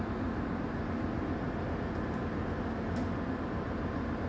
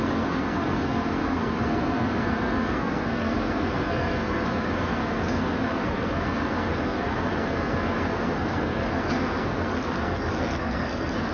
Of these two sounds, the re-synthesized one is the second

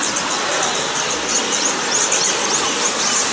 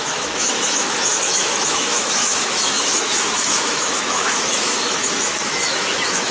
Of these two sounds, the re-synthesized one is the second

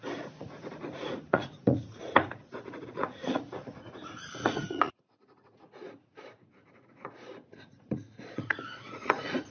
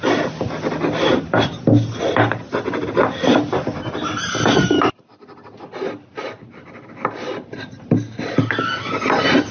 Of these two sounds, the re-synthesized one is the first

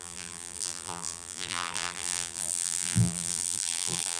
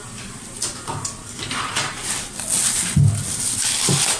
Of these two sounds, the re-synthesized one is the first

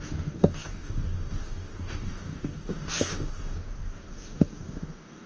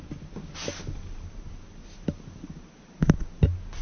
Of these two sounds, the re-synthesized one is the first